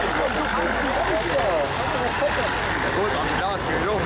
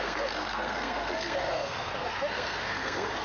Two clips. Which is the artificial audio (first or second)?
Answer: second